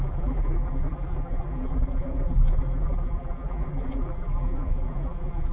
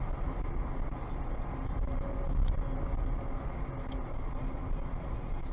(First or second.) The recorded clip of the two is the second